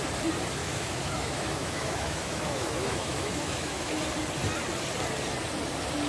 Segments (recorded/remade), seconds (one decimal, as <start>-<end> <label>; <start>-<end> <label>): 0.0-0.6 recorded; 0.6-4.0 remade; 4.0-6.1 recorded